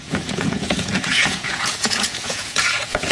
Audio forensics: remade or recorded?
remade